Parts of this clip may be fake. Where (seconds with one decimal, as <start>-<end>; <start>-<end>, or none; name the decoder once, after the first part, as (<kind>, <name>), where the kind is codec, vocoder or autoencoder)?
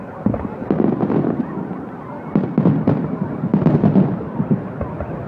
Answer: none